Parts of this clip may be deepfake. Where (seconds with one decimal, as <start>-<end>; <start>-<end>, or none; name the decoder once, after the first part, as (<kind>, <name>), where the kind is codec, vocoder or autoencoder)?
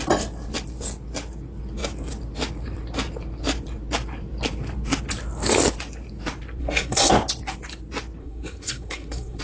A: 6.6-7.1 (codec, SNAC); 8.2-9.4